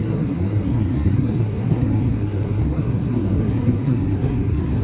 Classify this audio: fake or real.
fake